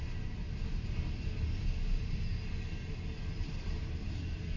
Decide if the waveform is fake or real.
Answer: real